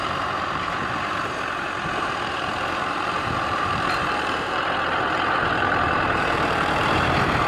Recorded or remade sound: remade